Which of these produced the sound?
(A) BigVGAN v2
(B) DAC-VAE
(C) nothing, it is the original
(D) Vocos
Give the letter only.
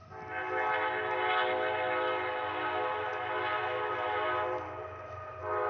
C